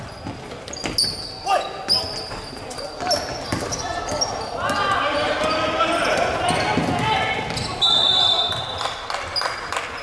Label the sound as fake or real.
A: real